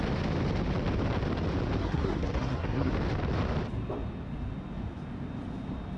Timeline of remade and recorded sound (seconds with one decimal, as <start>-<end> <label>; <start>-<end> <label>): 0.0-1.8 recorded; 1.8-2.9 remade; 2.9-6.0 recorded

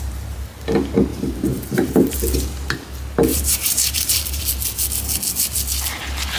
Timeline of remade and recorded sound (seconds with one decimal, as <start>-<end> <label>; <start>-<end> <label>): 0.0-1.1 recorded; 1.1-2.1 remade; 2.1-3.3 recorded; 3.3-4.4 remade; 4.4-6.4 recorded

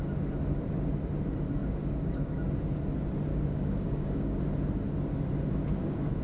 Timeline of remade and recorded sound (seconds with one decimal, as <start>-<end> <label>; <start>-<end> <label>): 0.0-1.6 recorded; 1.6-2.5 remade; 2.5-3.3 recorded; 3.3-4.4 remade; 4.4-5.6 recorded; 5.6-6.2 remade

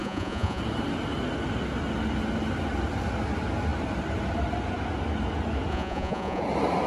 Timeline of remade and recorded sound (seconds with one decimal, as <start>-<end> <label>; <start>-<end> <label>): 0.0-0.6 remade; 0.6-5.7 recorded; 5.7-6.4 remade; 6.4-6.9 recorded

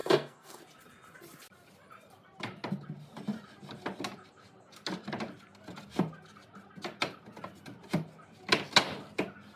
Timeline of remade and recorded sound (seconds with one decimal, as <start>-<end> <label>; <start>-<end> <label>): 0.0-0.6 remade; 0.6-9.6 recorded

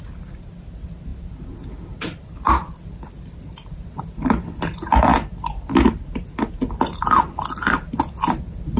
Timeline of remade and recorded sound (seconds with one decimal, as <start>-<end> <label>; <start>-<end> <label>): 0.0-8.8 recorded